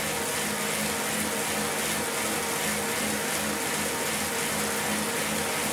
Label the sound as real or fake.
real